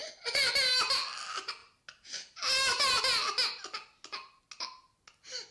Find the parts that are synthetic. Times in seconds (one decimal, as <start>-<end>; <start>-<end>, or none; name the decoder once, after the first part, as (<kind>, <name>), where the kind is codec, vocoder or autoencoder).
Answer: 0.0-0.5 (vocoder, Vocos)